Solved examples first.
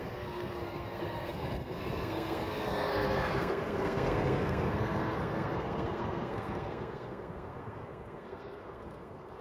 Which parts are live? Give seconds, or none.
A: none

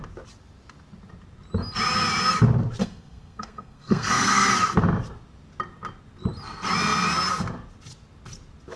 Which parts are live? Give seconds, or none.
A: 0.0-2.8; 4.5-8.8

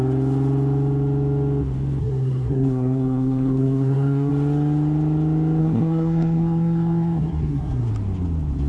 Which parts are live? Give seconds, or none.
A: 0.0-2.0; 4.3-5.6; 7.9-8.7

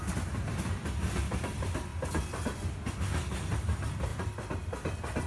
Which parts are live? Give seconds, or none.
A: 0.0-5.3

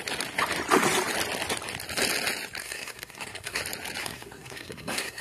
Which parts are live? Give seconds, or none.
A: 0.0-2.6; 3.6-4.0

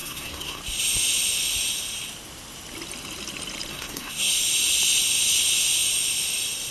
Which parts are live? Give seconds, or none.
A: 0.6-3.7; 4.3-6.7

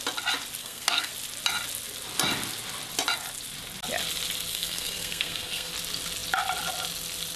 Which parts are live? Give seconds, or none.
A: 0.0-0.6; 1.1-4.5; 5.7-7.4

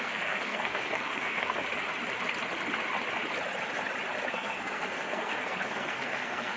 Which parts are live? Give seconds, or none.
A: 1.6-4.3